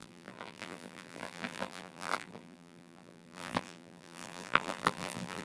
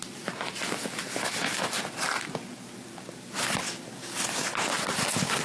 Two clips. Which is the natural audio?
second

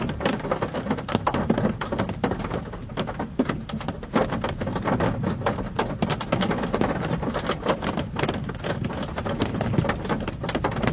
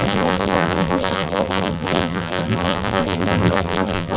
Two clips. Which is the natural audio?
first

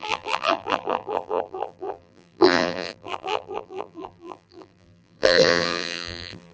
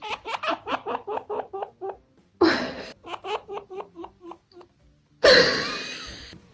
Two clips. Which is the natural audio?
second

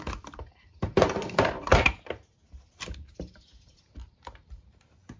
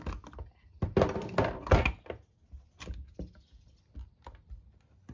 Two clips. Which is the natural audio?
second